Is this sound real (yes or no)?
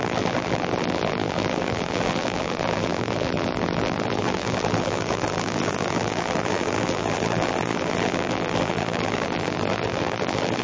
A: no